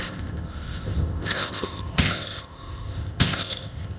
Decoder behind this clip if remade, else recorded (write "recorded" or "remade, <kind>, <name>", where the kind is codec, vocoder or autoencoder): remade, codec, ZipCodec